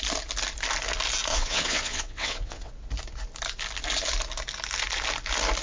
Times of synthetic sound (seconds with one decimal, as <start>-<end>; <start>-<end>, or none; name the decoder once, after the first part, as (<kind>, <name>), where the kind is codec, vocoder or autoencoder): 1.3-2.7 (vocoder, WaveNeXt)